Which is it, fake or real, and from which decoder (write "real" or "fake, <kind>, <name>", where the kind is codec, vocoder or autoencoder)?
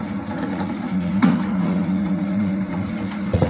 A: fake, vocoder, Vocos